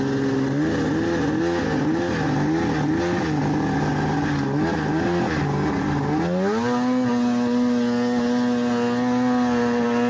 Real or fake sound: real